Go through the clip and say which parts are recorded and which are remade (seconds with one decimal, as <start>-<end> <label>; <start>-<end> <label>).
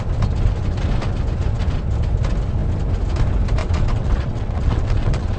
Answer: 0.0-3.6 recorded; 3.6-5.4 remade